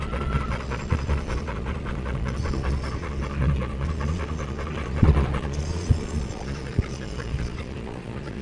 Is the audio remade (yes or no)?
yes